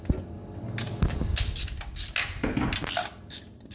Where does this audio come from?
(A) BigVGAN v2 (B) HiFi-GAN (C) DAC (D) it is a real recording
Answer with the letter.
D